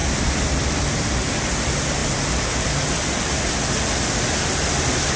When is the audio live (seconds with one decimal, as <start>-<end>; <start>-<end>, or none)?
0.0-5.2